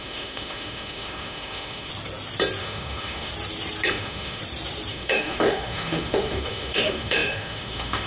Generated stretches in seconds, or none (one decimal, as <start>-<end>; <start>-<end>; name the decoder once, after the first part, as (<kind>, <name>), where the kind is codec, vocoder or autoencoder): 0.0-1.9 (autoencoder, DAC-VAE); 2.6-3.3; 3.9-4.4; 4.9-8.1